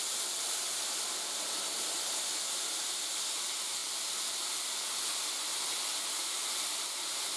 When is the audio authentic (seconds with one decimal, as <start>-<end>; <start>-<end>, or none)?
0.0-7.4